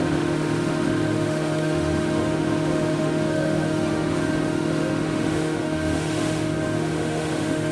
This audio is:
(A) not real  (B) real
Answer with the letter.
A